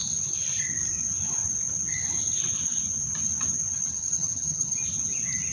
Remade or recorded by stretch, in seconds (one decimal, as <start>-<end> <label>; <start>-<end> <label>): 0.0-3.9 recorded; 3.9-4.8 remade; 4.8-5.5 recorded